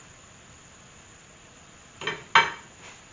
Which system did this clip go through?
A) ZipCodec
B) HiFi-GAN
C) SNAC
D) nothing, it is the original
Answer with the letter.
D